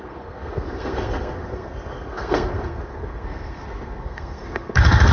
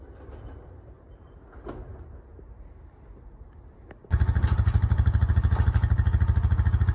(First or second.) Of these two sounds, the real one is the second